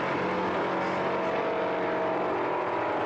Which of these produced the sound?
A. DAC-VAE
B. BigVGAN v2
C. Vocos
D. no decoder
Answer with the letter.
D